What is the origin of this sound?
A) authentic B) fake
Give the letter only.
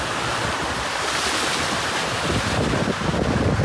A